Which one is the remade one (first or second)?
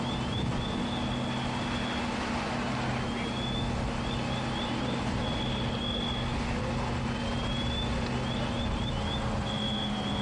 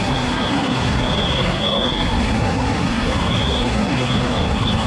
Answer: second